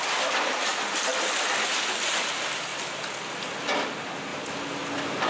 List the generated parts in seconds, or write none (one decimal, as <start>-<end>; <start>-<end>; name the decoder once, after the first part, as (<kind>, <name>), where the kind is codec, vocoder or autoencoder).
none